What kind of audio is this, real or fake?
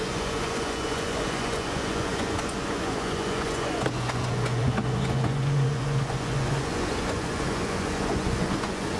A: fake